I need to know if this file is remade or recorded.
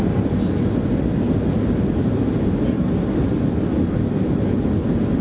recorded